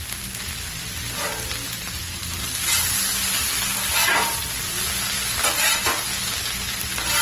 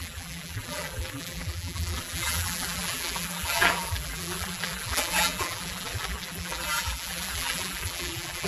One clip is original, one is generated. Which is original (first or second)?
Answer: first